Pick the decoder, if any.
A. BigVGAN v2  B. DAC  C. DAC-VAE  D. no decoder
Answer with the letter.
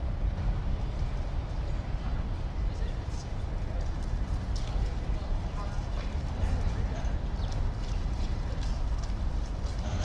D